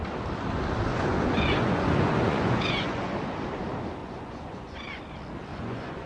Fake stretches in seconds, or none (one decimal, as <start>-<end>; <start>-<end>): 0.9-3.1; 4.0-5.0; 5.5-6.1